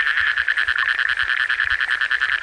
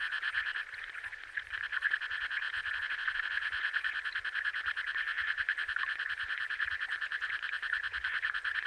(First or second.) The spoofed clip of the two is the second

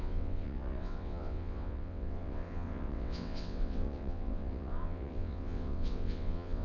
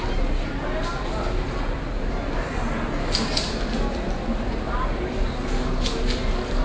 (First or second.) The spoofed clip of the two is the first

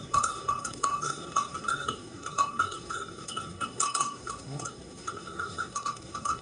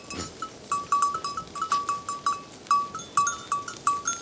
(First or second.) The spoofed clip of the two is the first